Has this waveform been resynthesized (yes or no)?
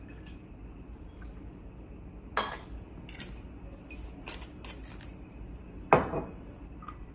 no